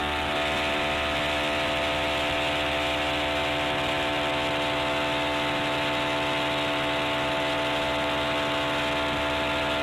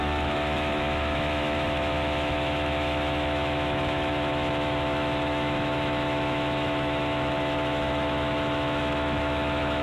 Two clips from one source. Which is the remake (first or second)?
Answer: second